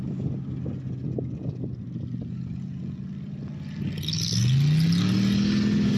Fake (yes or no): no